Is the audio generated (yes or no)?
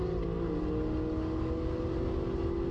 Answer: no